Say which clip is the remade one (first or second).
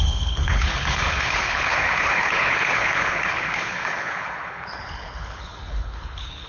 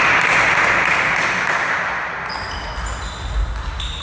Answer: first